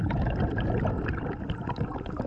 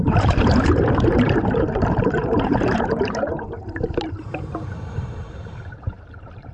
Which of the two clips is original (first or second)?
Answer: first